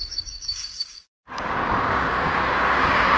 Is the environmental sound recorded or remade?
remade